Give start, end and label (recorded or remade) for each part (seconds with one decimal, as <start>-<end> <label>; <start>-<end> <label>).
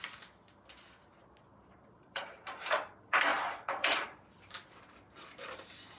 0.0-1.2 recorded; 1.2-2.8 remade; 2.8-3.3 recorded; 3.3-6.0 remade